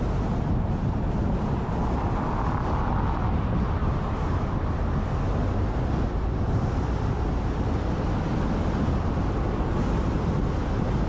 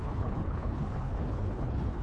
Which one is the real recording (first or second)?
first